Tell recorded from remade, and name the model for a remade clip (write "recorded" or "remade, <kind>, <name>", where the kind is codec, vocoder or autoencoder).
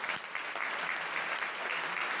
recorded